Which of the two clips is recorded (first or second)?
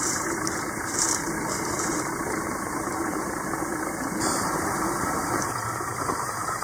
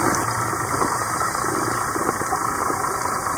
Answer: second